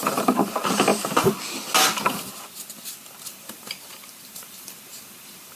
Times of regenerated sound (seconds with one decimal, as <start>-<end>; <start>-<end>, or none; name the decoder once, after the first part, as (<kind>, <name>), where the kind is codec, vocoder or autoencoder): 0.0-0.9 (vocoder, BigVGAN v2); 3.2-5.6